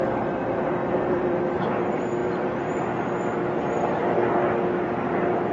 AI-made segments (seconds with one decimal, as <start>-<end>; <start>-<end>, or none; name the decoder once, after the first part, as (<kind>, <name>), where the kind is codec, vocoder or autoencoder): 0.8-1.4 (vocoder, BigVGAN v2); 2.2-2.8

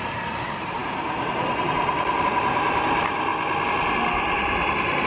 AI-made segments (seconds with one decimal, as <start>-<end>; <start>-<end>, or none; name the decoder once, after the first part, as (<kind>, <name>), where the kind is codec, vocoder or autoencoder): 0.0-3.3 (vocoder, BigVGAN v2); 3.9-5.1